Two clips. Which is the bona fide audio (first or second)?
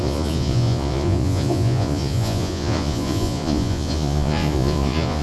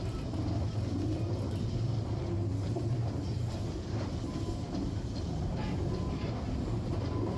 second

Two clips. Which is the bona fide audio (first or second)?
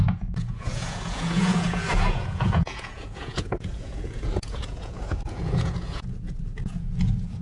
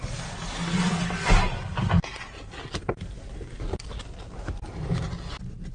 second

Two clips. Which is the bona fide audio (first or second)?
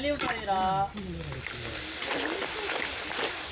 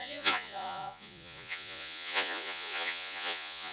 first